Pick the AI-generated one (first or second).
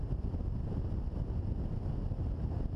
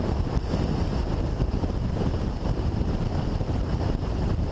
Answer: second